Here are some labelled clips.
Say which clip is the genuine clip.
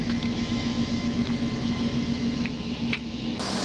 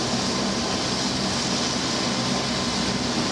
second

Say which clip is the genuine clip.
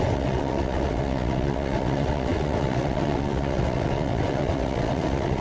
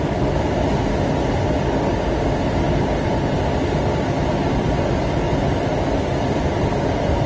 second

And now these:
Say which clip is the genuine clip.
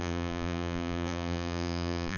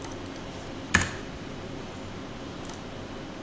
second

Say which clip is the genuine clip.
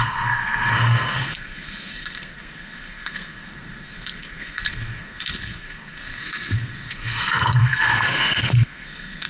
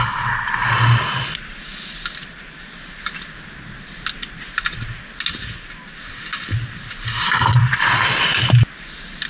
second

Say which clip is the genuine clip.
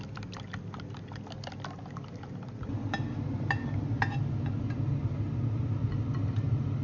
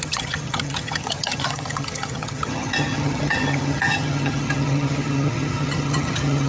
first